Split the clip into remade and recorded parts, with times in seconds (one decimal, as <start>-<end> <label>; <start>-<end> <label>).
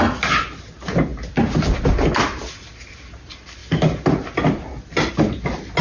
0.0-5.8 recorded